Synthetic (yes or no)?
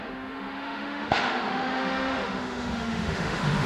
yes